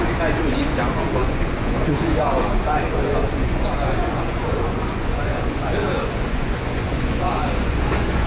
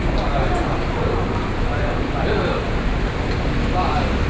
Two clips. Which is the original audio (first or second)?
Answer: second